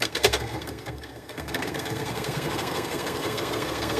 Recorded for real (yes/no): no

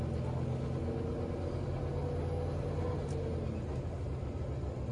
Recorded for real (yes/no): yes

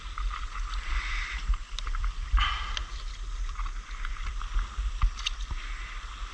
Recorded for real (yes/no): yes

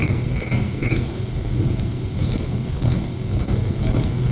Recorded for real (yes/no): no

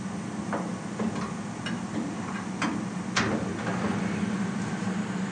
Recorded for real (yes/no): yes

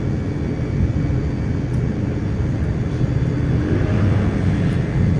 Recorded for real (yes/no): yes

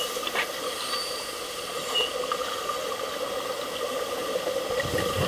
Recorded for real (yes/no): yes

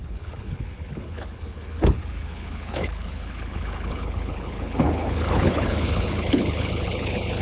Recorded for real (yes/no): no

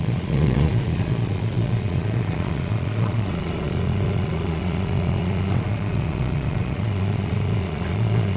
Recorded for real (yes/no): no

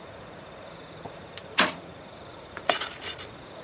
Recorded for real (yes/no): no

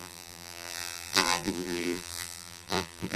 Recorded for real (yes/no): no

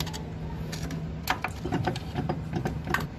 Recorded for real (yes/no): yes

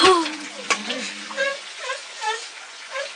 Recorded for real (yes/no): no